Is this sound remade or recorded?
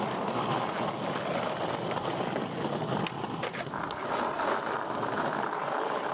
recorded